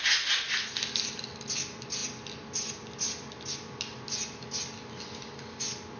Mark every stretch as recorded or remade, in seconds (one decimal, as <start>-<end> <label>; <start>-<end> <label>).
0.0-6.0 recorded